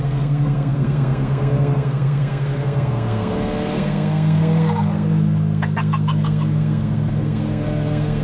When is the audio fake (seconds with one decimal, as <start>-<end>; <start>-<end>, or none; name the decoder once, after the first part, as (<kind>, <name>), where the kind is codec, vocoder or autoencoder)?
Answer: 0.0-8.2 (codec, SNAC)

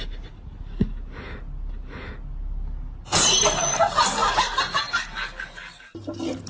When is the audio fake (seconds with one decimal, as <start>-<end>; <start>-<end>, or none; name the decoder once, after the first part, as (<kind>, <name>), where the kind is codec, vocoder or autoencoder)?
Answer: none

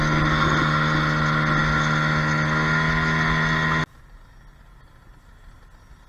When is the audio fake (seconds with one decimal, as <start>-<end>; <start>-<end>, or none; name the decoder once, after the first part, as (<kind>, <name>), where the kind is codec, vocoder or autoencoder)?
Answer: none

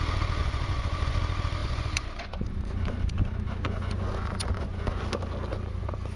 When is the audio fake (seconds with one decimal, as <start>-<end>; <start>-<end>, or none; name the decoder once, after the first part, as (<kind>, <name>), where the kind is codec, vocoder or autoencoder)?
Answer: 0.4-1.2 (vocoder, Vocos); 1.6-5.0; 5.5-6.2